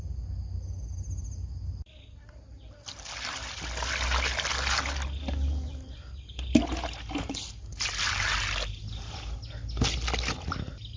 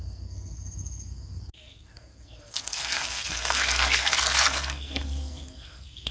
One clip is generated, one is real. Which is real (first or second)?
first